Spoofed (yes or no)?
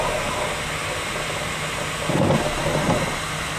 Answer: no